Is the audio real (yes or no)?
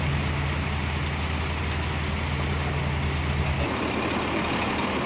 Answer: yes